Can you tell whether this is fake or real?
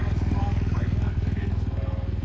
fake